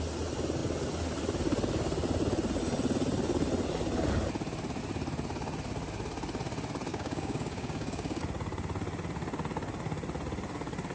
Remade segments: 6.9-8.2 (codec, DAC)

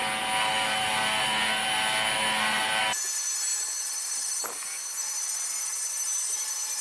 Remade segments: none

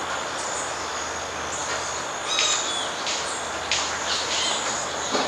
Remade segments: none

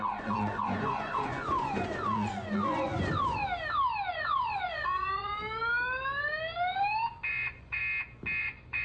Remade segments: 0.0-3.4 (vocoder, Vocos); 4.1-5.3; 7.3-7.8; 8.4-8.8

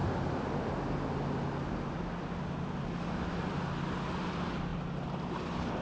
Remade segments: none

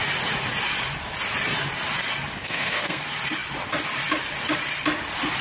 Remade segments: 2.4-3.0 (codec, SNAC)

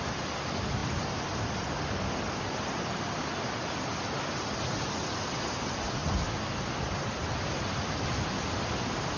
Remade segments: none

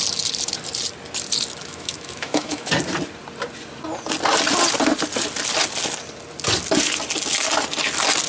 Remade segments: 1.7-2.7 (autoencoder, DAC-VAE)